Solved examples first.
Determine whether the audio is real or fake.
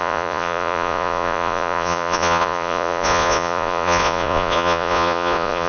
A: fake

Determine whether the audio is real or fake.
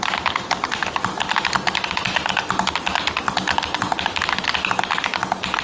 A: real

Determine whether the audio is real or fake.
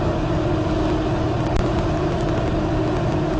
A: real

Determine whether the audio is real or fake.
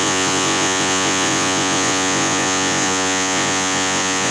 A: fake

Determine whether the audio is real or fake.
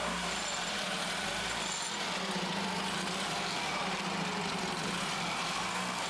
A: real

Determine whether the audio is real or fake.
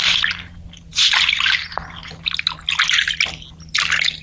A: real